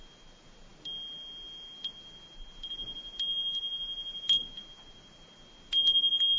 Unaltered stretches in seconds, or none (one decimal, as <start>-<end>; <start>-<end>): 0.0-6.4